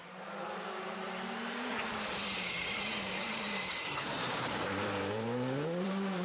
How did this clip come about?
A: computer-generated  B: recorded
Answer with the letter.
A